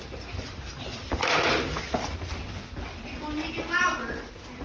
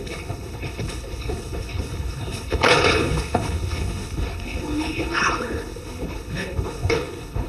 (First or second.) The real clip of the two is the first